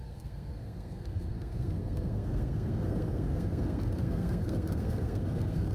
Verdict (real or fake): fake